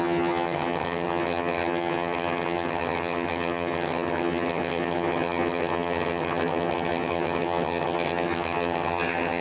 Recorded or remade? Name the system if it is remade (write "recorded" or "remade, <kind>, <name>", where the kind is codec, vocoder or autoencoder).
remade, vocoder, HiFi-GAN